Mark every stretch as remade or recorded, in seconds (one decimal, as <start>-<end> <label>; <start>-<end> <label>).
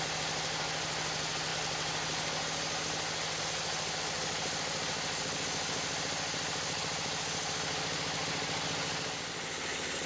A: 0.0-10.1 recorded